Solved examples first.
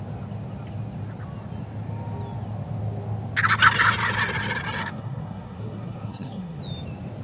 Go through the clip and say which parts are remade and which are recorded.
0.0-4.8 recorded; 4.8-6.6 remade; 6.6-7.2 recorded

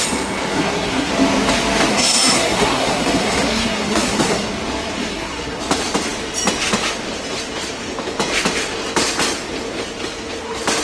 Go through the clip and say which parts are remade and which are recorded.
0.0-0.5 recorded; 0.5-1.1 remade; 1.1-1.9 recorded; 1.9-4.5 remade; 4.5-5.0 recorded; 5.0-5.6 remade; 5.6-10.8 recorded

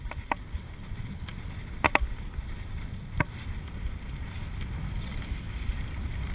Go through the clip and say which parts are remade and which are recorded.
0.0-6.3 recorded

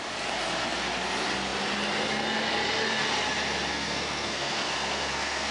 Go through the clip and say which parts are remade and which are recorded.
0.0-3.7 recorded; 3.7-5.5 remade